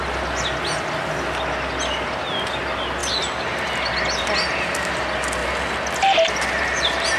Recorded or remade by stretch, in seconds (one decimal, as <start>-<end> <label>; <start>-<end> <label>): 0.0-7.2 recorded